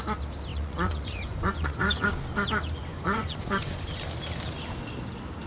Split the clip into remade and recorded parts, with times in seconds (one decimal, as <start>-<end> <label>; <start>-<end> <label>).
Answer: 0.0-0.5 recorded; 0.5-2.1 remade; 2.1-2.9 recorded; 2.9-3.8 remade; 3.8-5.5 recorded

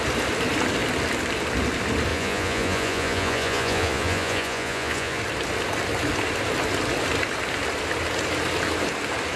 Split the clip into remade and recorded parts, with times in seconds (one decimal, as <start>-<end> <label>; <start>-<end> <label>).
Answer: 0.0-2.1 recorded; 2.1-5.2 remade; 5.2-9.4 recorded

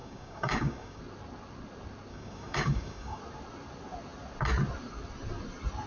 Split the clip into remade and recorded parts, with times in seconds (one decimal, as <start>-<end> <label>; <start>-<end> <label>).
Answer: 0.0-1.0 remade; 1.0-2.1 recorded; 2.1-3.2 remade; 3.2-5.9 recorded

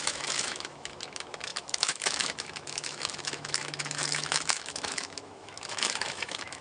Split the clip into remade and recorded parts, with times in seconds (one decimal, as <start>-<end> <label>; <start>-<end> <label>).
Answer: 0.0-6.6 remade

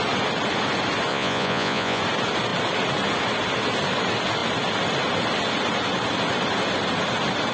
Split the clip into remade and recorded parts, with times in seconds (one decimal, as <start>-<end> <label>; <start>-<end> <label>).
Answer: 0.0-1.1 recorded; 1.1-2.0 remade; 2.0-7.5 recorded